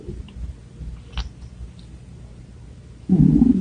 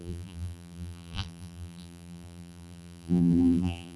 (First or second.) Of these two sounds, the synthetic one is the second